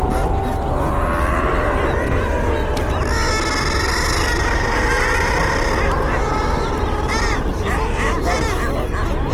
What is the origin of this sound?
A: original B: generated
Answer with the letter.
A